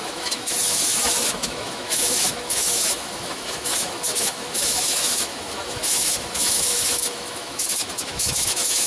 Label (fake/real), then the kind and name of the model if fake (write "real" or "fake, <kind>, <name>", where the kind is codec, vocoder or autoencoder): fake, autoencoder, DAC-VAE